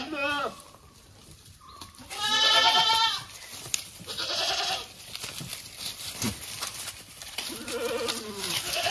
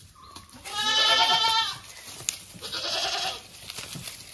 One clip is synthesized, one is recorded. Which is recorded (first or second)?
second